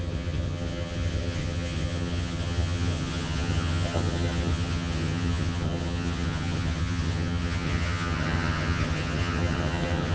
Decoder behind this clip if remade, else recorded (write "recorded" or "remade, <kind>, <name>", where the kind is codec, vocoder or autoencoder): remade, vocoder, HiFi-GAN